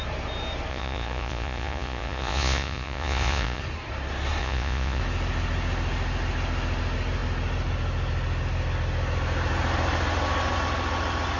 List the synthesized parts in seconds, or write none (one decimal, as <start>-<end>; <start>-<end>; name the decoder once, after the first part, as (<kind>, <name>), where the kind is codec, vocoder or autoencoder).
0.7-3.6 (vocoder, Vocos); 4.4-5.0